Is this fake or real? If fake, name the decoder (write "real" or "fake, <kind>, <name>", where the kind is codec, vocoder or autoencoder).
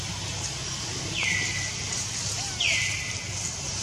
real